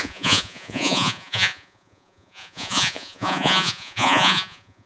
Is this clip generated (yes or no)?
yes